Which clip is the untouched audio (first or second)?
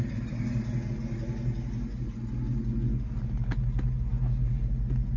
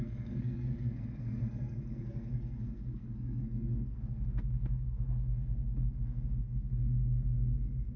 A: first